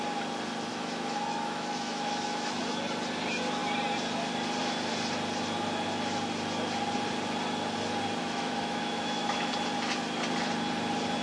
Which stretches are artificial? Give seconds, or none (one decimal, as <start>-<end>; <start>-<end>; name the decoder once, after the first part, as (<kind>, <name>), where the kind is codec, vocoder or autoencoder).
0.7-2.6 (autoencoder, DAC-VAE); 8.2-9.5